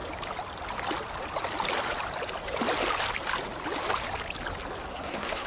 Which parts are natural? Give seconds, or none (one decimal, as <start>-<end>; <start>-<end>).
0.0-4.9